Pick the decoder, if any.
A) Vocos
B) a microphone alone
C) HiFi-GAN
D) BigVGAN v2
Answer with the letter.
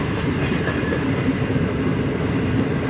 B